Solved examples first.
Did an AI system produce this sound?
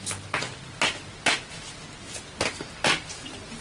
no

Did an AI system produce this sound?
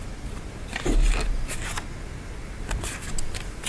no